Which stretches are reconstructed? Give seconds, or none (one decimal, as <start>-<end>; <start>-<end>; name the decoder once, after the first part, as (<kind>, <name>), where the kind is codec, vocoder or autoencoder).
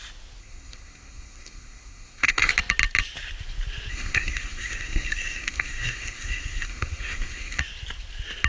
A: 0.4-2.5 (codec, SNAC); 3.9-7.6